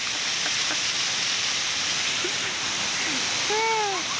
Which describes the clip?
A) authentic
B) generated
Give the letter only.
A